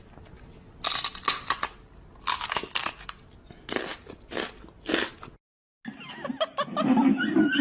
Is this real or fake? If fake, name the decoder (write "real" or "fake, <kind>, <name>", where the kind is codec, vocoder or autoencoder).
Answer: real